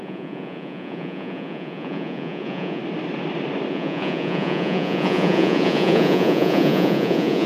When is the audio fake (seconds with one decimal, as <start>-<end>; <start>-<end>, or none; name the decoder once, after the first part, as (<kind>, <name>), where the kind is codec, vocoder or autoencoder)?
0.0-2.8 (vocoder, Vocos); 3.7-7.5